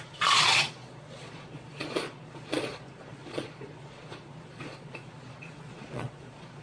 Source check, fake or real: fake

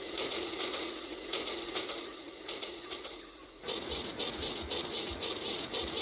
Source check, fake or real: fake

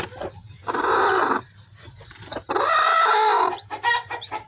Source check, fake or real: fake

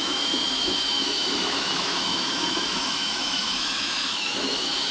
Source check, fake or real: fake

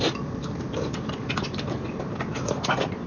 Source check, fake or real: real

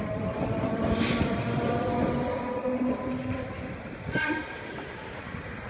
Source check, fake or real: fake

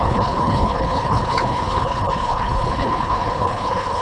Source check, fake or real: fake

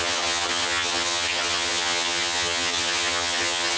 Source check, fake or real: fake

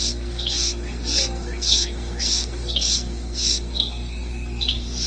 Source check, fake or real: fake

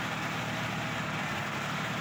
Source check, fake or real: real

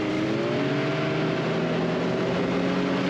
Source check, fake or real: real